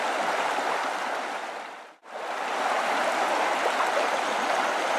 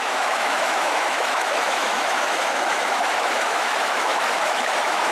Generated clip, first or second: second